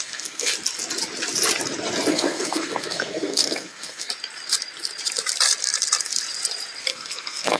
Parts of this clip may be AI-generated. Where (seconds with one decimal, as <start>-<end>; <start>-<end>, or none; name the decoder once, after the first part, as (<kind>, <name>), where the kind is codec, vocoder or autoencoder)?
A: 0.0-0.5 (codec, SNAC); 2.1-4.1; 6.9-7.6